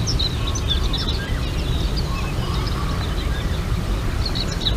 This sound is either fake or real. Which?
real